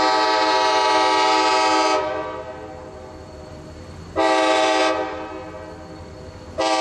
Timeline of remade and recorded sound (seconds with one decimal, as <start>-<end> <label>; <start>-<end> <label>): 0.0-6.8 recorded